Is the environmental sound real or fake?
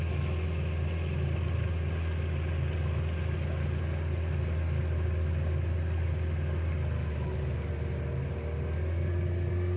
real